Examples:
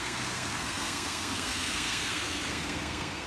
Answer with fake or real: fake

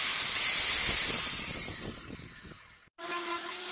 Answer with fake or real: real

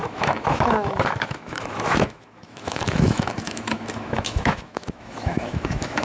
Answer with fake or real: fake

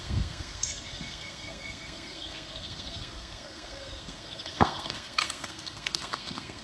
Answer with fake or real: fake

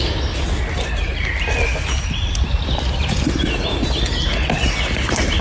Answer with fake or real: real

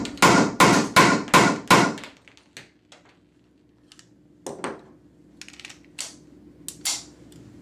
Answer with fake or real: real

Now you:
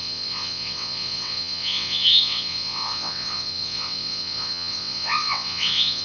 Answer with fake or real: fake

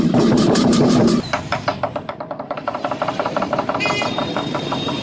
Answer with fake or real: fake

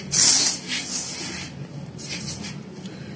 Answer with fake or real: real